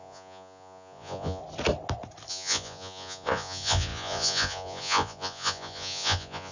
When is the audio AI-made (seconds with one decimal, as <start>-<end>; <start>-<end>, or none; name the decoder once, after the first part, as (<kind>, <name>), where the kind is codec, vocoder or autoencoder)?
0.0-1.4 (vocoder, Vocos); 2.3-6.5